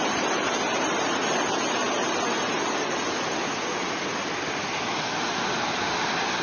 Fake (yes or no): no